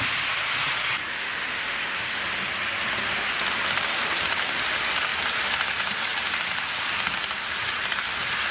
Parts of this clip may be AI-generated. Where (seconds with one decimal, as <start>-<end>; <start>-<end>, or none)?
1.1-2.2